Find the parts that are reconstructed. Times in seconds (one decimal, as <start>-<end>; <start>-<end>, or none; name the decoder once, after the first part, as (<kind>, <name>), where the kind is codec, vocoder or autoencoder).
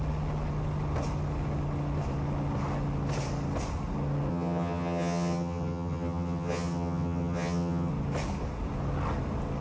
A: 4.3-7.9 (vocoder, HiFi-GAN)